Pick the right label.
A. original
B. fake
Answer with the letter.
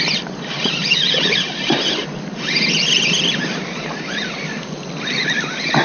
A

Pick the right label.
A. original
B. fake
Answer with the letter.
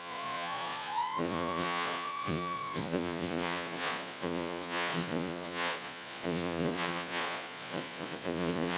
B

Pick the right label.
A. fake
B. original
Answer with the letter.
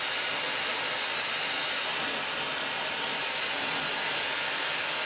B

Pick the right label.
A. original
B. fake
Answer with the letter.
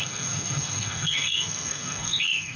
B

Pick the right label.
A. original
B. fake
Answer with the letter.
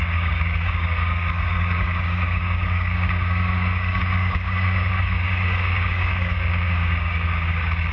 B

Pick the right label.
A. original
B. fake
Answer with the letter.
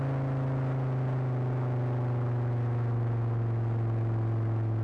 A